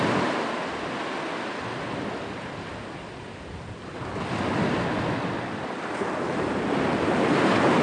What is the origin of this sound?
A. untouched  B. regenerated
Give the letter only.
A